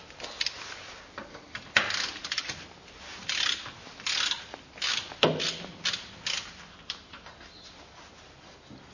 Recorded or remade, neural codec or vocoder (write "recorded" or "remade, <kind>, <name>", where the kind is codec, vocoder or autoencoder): recorded